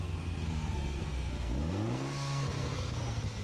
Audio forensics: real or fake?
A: fake